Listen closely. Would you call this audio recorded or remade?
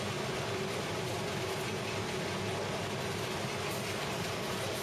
recorded